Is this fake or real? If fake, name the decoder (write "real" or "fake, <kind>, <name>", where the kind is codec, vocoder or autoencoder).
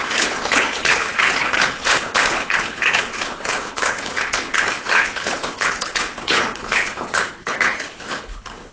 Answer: fake, codec, HILCodec